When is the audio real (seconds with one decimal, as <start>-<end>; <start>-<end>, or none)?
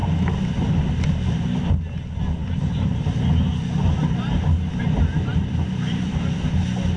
0.0-2.4; 3.1-5.3; 6.6-7.0